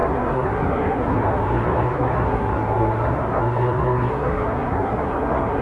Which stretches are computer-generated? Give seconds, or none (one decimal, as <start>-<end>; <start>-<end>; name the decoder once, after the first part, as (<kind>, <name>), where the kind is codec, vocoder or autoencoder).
0.0-5.6 (codec, SNAC)